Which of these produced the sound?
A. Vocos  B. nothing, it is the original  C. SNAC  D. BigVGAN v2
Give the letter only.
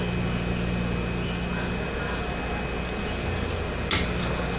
B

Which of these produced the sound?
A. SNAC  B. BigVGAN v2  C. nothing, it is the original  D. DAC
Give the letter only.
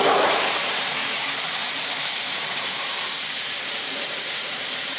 B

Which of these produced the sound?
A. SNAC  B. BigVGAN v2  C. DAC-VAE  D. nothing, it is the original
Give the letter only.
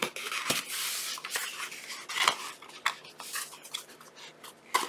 B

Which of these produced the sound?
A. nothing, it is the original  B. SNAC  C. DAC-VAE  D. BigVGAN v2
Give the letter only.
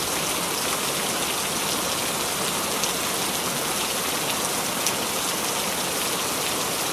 A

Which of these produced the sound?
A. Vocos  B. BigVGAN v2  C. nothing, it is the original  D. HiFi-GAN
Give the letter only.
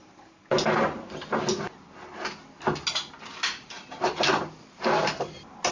C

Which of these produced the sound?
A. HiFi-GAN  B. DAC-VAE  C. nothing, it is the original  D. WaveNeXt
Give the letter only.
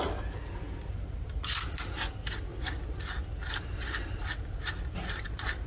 C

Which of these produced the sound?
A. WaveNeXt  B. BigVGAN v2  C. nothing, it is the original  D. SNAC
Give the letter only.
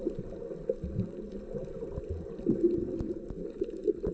C